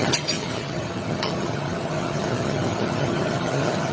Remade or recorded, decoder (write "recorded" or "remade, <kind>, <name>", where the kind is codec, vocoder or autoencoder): remade, vocoder, HiFi-GAN